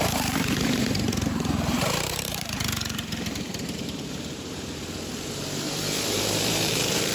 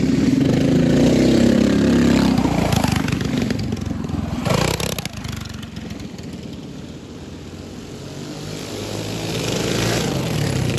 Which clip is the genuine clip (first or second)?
second